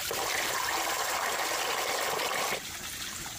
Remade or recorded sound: recorded